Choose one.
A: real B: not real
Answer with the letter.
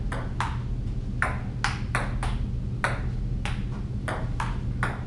A